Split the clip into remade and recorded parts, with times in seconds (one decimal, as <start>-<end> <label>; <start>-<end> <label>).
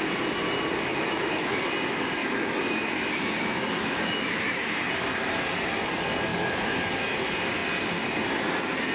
0.0-0.9 recorded; 0.9-1.6 remade; 1.6-2.2 recorded; 2.2-4.9 remade; 4.9-6.3 recorded; 6.3-6.9 remade; 6.9-8.9 recorded